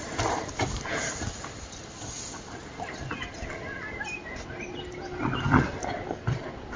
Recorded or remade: recorded